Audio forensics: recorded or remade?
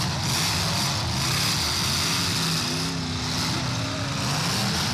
recorded